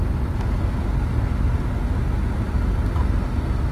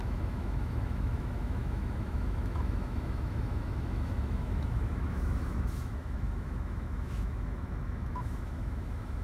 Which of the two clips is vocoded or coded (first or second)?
second